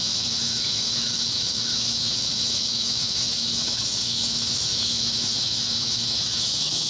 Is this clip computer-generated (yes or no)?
yes